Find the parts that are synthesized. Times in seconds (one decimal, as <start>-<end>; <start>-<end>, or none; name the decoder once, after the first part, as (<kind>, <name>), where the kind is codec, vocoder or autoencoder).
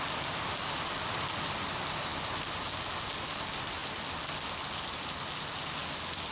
none